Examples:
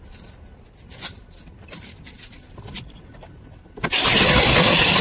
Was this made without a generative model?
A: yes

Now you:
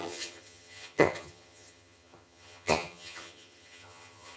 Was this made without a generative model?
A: no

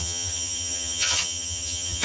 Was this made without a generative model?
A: no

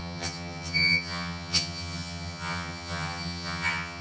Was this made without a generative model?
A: no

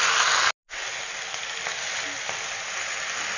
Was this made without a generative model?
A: yes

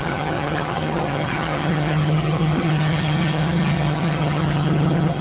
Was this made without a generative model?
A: no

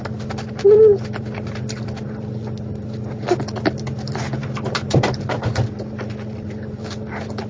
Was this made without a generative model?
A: yes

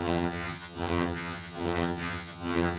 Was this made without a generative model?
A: no